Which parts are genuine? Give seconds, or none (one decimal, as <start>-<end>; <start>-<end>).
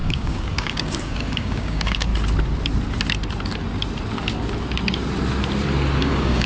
2.1-6.0